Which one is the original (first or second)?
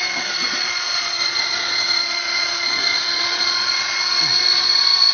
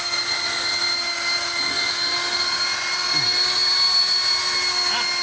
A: second